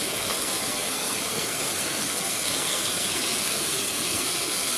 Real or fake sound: fake